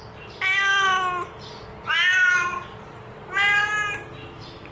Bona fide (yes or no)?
yes